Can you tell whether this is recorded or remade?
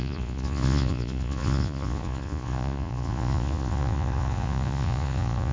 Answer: remade